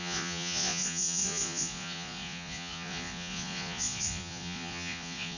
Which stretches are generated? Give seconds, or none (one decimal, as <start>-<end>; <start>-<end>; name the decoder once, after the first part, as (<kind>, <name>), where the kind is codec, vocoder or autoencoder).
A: 0.0-5.4 (vocoder, Vocos)

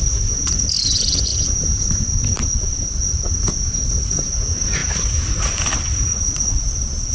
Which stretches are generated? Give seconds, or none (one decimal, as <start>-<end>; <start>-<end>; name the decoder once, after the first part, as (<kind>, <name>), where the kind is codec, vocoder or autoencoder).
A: 6.1-7.1 (vocoder, Vocos)

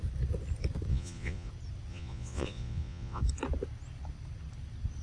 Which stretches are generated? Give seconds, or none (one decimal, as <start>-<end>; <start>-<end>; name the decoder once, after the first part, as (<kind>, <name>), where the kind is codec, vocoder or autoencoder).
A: 0.9-1.5 (vocoder, Vocos); 1.9-3.2

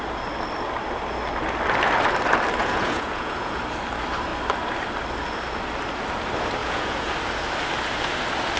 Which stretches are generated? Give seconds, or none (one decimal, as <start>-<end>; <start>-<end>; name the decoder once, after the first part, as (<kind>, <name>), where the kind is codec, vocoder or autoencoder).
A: 2.6-3.6 (vocoder, Vocos); 6.6-7.1

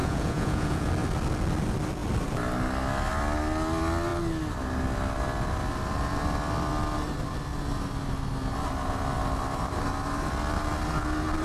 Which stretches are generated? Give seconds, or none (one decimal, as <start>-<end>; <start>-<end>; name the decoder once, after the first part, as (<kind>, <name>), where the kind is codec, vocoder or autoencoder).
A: 0.0-0.9 (vocoder, Vocos)

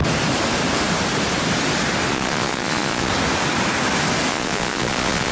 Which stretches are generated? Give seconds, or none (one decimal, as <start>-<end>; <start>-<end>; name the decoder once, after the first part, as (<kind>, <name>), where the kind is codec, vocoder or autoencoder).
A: 2.1-3.1 (vocoder, Vocos); 4.3-5.3

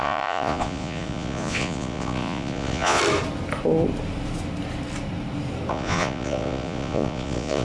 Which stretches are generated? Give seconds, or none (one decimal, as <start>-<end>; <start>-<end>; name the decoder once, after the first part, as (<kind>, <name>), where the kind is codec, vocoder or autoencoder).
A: 0.0-3.0 (vocoder, Vocos); 5.7-7.6